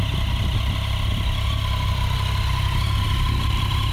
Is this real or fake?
real